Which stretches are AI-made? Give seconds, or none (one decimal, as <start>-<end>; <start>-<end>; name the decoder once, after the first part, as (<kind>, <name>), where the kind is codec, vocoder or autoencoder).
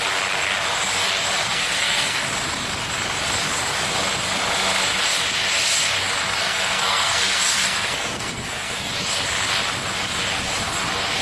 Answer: 1.4-2.2 (codec, SNAC); 6.4-8.9